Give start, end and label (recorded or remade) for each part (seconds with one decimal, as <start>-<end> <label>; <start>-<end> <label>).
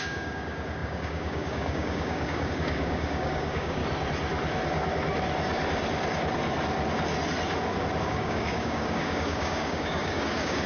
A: 0.0-3.8 remade; 3.8-8.0 recorded; 8.0-10.7 remade